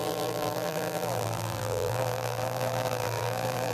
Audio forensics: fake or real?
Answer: fake